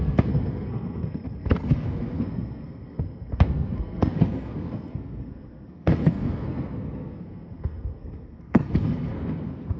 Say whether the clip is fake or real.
fake